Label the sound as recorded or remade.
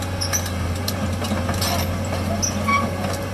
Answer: recorded